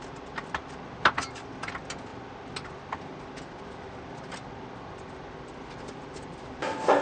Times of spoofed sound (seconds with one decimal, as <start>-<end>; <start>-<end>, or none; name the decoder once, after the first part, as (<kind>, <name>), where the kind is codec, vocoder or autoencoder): none